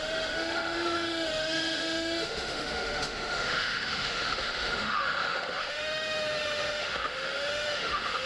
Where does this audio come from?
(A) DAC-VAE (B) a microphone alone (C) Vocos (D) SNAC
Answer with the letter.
A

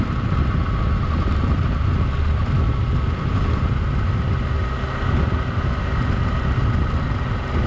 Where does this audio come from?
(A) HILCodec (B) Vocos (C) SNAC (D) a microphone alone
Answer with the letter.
D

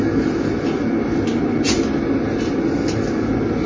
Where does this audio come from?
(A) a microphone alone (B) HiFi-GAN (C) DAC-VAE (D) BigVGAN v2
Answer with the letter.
A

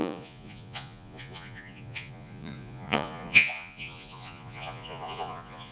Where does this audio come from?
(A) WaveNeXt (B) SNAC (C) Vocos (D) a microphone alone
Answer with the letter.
C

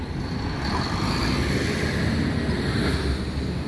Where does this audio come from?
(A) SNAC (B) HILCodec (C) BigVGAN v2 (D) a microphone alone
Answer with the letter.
D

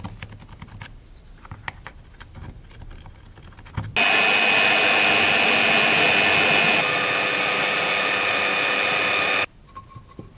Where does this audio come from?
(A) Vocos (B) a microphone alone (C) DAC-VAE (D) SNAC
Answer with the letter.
B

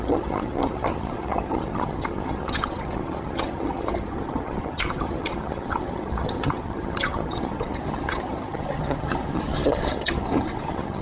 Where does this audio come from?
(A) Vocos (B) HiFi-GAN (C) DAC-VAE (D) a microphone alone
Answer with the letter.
B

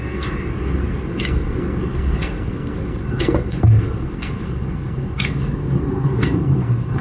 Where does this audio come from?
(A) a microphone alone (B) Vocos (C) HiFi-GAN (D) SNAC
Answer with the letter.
D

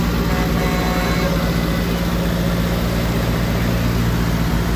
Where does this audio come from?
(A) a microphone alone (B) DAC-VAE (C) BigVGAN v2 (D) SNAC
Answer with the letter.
A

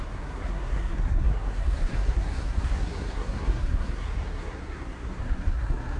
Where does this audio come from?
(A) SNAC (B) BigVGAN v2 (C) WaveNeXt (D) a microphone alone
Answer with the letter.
A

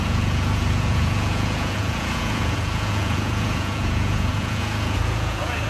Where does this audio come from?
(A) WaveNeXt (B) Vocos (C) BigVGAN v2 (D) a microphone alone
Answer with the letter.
B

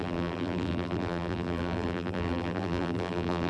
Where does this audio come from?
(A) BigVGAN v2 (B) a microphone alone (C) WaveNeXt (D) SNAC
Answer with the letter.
A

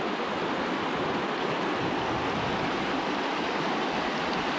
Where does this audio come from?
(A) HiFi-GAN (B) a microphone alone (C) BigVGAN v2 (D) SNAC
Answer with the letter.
B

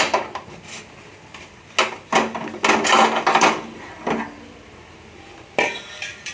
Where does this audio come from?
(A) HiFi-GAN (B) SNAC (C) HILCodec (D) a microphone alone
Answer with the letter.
D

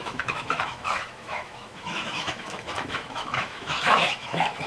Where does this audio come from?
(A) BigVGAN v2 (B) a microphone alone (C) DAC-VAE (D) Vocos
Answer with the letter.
C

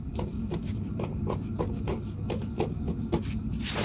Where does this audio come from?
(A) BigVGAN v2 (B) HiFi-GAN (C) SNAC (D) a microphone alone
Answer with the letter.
D